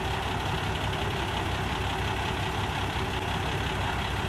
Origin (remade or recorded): recorded